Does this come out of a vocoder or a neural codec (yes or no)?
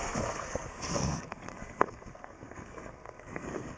yes